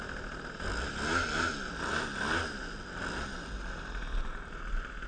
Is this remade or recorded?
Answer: recorded